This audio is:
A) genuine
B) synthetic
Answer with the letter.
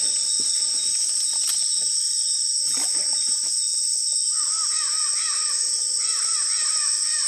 A